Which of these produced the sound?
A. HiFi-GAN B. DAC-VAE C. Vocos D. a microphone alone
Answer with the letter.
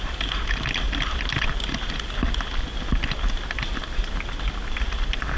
D